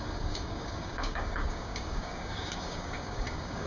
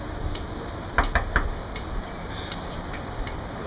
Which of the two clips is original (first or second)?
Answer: second